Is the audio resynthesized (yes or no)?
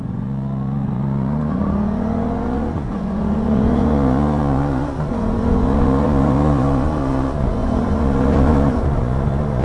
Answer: yes